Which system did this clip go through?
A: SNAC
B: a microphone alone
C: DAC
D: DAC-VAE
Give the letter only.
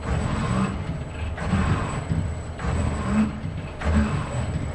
B